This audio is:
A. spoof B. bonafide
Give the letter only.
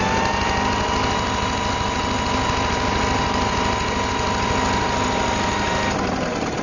B